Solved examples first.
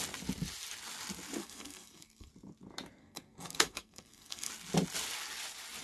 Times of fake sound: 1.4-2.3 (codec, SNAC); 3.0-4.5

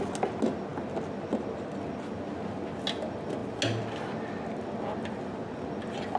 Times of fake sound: none

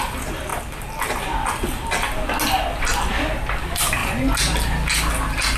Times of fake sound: none

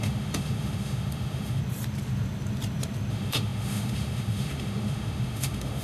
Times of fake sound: 0.0-1.6 (autoencoder, DAC-VAE); 3.1-5.8

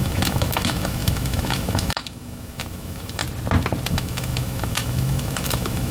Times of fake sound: 0.0-3.2 (autoencoder, DAC-VAE); 3.9-5.9

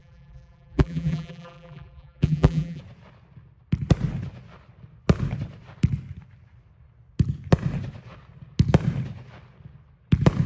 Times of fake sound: 0.0-2.8 (vocoder, BigVGAN v2)

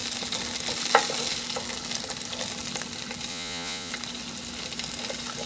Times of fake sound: 3.3-3.9 (vocoder, Vocos)

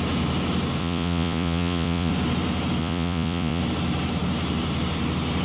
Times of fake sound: 0.8-2.1 (vocoder, Vocos); 2.8-3.6